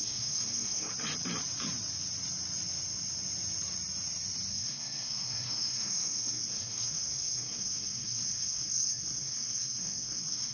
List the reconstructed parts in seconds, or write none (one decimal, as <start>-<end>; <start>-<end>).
0.0-0.9; 4.5-10.5